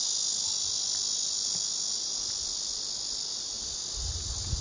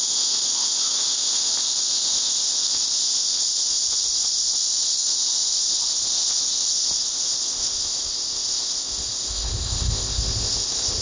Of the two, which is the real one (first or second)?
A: first